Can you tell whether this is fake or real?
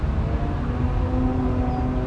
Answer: real